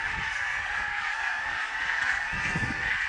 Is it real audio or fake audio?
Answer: fake